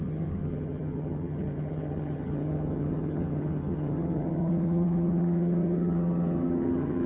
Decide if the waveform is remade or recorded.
remade